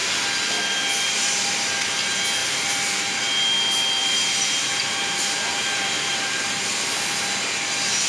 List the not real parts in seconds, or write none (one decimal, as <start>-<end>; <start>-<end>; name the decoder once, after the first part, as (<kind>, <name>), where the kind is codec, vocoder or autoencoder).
2.4-3.2 (vocoder, BigVGAN v2); 4.0-6.5